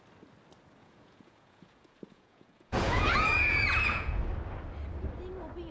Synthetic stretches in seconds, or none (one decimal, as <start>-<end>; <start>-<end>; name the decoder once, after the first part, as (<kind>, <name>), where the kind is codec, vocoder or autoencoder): 0.8-4.2 (vocoder, Vocos)